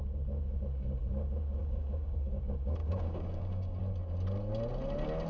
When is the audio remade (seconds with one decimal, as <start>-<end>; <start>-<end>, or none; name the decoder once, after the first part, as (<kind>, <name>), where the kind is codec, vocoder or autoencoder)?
1.6-2.4 (codec, DAC); 2.8-3.8